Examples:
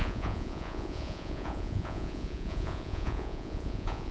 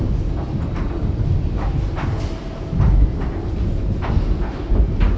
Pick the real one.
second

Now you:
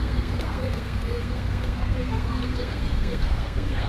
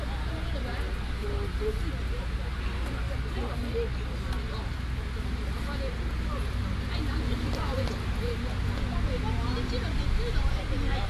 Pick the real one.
second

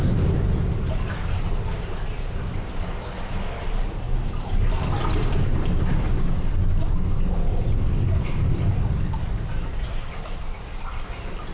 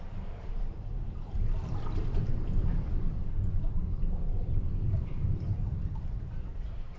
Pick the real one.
first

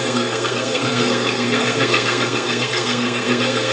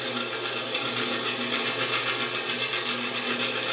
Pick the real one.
second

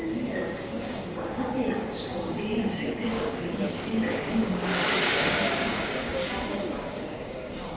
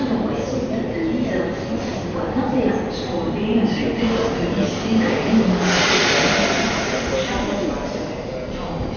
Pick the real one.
second